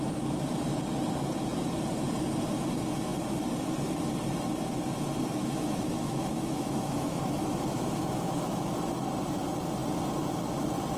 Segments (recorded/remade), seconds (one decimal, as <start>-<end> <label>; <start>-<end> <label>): 0.0-5.4 recorded; 5.4-8.7 remade; 8.7-11.0 recorded